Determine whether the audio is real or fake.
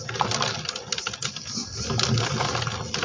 real